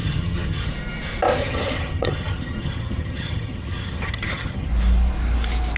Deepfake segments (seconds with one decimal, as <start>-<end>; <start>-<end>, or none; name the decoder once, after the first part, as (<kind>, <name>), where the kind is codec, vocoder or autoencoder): 0.0-0.7 (vocoder, HiFi-GAN); 1.4-4.7

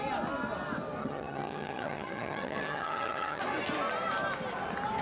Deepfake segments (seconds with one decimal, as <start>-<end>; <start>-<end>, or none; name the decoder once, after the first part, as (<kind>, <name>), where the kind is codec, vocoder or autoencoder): 1.0-3.4 (vocoder, HiFi-GAN)